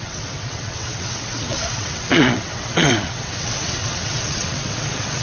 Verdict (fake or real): fake